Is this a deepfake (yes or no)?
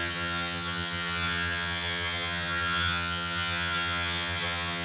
yes